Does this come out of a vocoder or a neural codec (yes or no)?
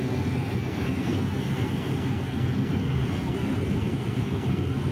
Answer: yes